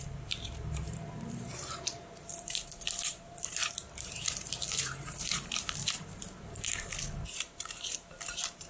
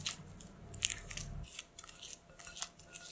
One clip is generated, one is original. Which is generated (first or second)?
first